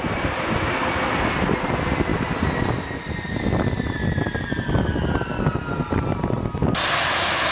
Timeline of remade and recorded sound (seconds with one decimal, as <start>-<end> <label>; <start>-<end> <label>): 0.0-7.5 recorded